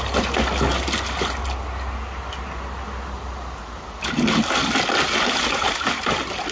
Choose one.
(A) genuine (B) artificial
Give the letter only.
A